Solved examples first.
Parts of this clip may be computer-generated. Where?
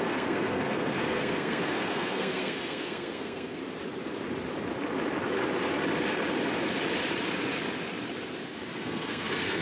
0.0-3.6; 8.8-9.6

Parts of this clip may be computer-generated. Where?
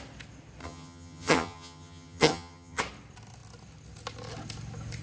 0.6-2.8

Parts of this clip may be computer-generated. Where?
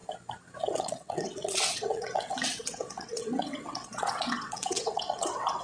0.6-5.6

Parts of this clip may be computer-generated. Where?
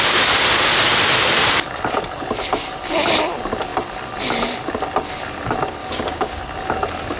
5.8-6.4